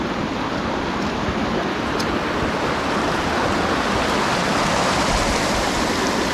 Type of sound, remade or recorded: recorded